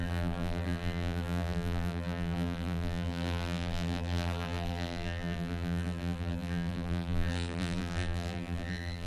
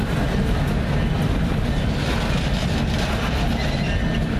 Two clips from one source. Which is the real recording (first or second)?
second